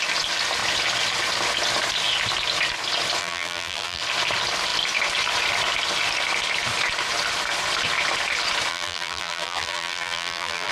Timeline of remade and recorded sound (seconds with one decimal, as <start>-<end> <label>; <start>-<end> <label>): 0.0-3.2 recorded; 3.2-4.0 remade; 4.0-8.7 recorded; 8.7-10.7 remade